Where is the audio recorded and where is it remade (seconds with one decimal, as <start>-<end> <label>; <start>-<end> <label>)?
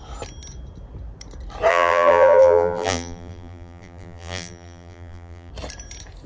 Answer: 0.0-1.7 recorded; 1.7-5.5 remade; 5.5-6.3 recorded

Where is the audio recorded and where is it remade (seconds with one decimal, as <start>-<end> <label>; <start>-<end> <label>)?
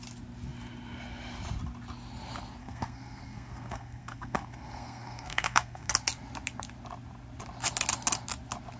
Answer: 0.0-2.6 recorded; 2.6-5.9 remade; 5.9-8.8 recorded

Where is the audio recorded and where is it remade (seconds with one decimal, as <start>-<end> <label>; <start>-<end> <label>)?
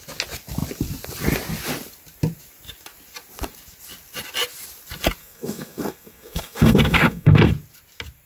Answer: 0.0-5.2 recorded; 5.2-7.5 remade; 7.5-8.3 recorded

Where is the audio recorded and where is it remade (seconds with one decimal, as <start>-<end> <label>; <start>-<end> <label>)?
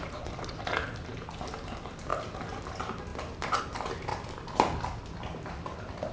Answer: 0.0-6.1 recorded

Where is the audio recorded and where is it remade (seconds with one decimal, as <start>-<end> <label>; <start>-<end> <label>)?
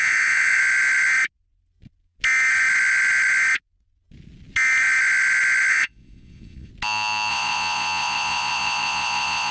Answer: 0.0-0.6 remade; 0.6-5.7 recorded; 5.7-6.7 remade; 6.7-7.3 recorded; 7.3-9.5 remade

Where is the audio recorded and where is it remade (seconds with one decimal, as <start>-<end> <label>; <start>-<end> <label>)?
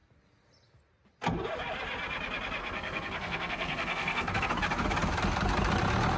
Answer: 0.0-2.6 recorded; 2.6-4.5 remade; 4.5-6.2 recorded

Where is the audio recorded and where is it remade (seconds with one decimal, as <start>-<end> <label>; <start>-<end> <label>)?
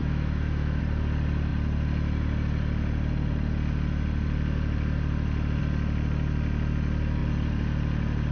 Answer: 0.0-0.8 remade; 0.8-8.3 recorded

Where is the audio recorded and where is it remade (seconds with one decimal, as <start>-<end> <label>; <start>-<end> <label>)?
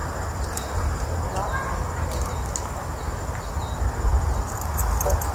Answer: 0.0-5.3 recorded